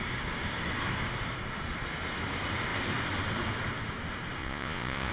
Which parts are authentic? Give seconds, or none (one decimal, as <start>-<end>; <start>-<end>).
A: 0.0-4.4